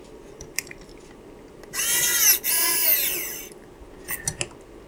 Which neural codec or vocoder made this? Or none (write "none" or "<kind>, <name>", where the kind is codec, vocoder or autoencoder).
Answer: none